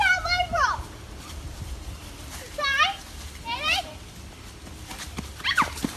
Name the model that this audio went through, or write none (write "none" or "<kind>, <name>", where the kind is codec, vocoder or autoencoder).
vocoder, BigVGAN v2